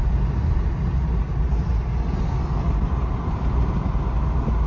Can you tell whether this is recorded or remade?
recorded